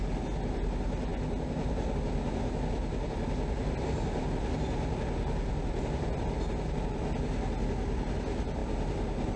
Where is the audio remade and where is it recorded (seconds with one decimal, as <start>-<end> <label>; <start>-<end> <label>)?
0.0-9.4 recorded